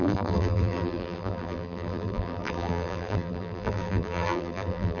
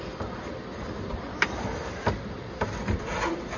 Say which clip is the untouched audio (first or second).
second